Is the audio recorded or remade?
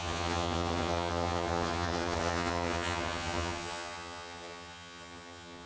remade